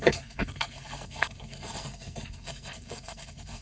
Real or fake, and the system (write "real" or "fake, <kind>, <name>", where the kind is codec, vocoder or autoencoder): fake, codec, SNAC